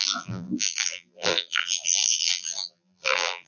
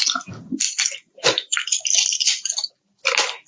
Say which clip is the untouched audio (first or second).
second